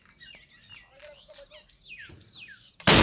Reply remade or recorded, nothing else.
recorded